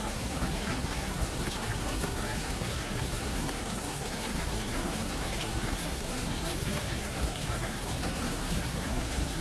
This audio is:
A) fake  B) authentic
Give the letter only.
A